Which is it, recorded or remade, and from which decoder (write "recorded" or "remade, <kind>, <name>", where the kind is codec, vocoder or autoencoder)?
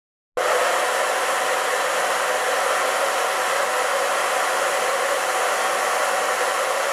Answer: recorded